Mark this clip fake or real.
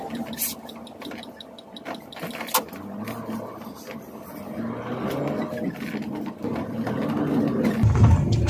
real